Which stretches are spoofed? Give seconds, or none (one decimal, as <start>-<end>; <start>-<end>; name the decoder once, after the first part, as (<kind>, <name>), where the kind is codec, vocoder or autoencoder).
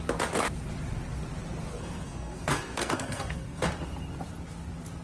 1.7-3.7 (codec, SNAC)